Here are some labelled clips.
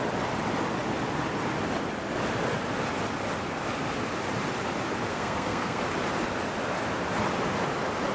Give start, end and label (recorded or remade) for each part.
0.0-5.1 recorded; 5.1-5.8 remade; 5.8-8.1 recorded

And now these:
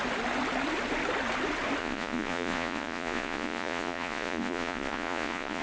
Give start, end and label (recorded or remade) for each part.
0.0-1.8 recorded; 1.8-5.6 remade